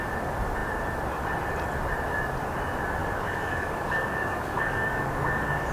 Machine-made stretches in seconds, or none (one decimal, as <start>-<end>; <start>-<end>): 3.0-5.7